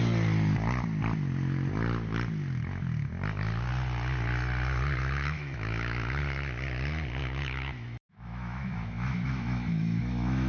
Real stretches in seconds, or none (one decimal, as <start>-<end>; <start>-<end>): 0.0-5.0; 6.2-7.2